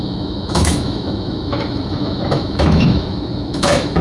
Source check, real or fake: fake